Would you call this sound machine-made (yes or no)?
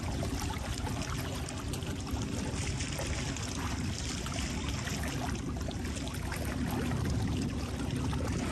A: no